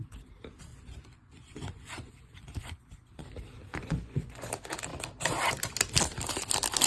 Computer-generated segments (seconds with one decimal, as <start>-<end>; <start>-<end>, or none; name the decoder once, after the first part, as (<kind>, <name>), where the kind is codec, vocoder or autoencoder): 0.7-3.2 (vocoder, Vocos); 3.7-4.5